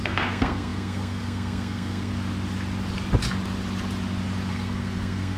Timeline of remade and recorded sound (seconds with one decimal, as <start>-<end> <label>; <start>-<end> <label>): 0.0-2.1 remade; 2.1-4.5 recorded; 4.5-5.4 remade